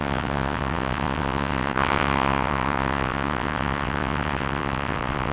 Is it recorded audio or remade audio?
remade